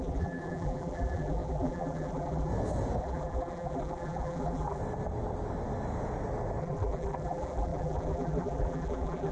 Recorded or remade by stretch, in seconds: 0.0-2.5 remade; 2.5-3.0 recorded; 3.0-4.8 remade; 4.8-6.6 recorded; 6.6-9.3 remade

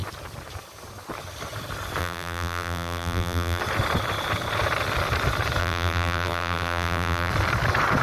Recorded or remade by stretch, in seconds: 0.0-2.0 recorded; 2.0-3.6 remade; 3.6-5.6 recorded; 5.6-7.3 remade; 7.3-8.0 recorded

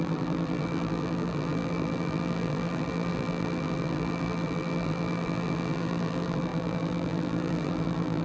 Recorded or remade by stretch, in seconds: 0.0-8.2 remade

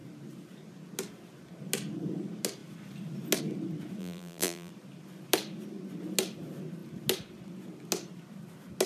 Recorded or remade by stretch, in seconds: 0.0-4.0 recorded; 4.0-4.7 remade; 4.7-8.9 recorded

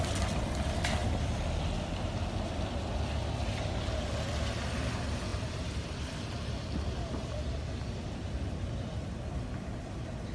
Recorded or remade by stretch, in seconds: 0.0-1.0 recorded; 1.0-4.0 remade; 4.0-5.3 recorded; 5.3-9.3 remade; 9.3-10.3 recorded

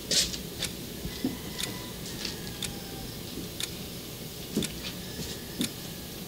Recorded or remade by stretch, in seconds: 0.0-6.3 recorded

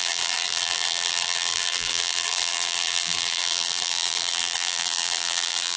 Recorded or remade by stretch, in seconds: 0.0-5.8 remade